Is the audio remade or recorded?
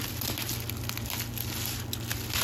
recorded